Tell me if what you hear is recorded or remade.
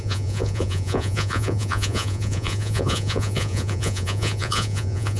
remade